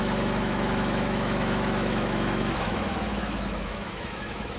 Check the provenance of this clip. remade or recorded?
remade